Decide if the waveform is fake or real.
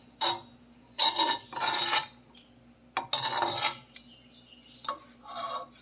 real